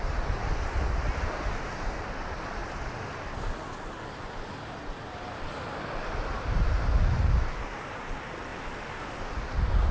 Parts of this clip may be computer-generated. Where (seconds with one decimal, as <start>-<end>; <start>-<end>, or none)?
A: none